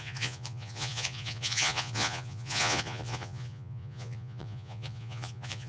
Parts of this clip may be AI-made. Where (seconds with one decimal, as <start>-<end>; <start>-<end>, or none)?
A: 0.0-5.7